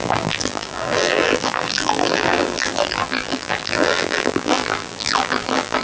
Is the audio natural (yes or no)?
no